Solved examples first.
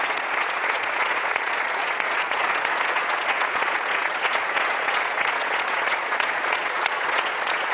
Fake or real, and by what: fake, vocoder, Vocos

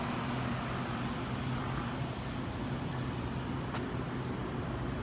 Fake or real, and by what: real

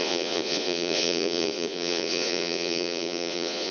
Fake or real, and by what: fake, vocoder, Vocos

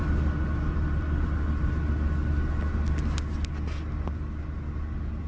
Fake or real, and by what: real